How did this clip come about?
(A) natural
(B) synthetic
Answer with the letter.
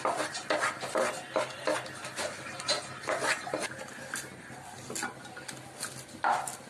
A